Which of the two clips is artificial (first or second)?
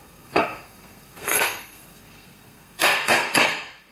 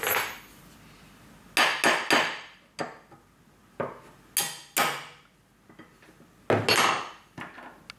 first